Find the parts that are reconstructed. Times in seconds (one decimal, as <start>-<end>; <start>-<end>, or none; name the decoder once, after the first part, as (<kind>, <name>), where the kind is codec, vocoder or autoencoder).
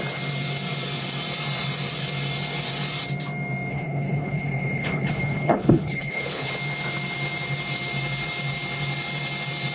3.7-6.5 (codec, HILCodec)